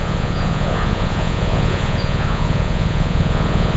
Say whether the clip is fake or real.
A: fake